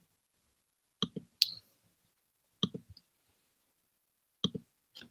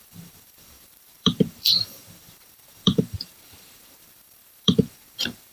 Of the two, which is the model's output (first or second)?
second